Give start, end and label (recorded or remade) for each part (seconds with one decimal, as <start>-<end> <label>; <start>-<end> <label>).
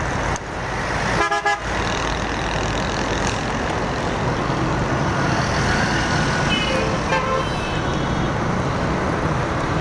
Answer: 0.0-9.8 recorded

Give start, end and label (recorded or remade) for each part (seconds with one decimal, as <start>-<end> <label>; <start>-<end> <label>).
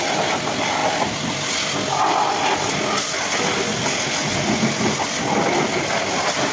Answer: 0.0-6.5 recorded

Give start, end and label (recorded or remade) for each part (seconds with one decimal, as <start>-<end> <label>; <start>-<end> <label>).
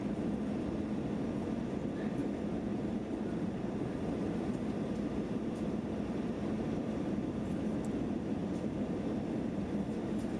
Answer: 0.0-2.2 recorded; 2.2-7.3 remade; 7.3-8.4 recorded; 8.4-10.4 remade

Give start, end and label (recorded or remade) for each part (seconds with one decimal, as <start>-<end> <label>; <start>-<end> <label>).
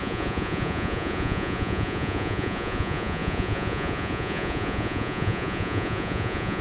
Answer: 0.0-6.6 remade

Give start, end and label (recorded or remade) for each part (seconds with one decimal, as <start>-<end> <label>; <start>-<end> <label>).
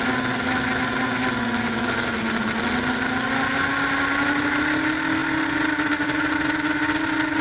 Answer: 0.0-7.4 recorded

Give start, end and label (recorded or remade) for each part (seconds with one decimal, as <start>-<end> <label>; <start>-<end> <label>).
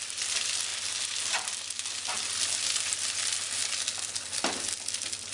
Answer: 0.0-5.3 recorded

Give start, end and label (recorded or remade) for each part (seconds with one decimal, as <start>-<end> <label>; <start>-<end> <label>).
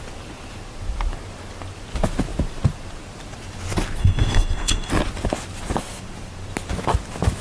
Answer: 0.0-4.0 recorded; 4.0-4.9 remade; 4.9-7.4 recorded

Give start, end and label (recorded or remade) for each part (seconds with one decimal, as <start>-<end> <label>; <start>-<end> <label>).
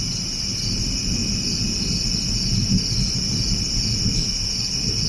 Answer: 0.0-5.1 recorded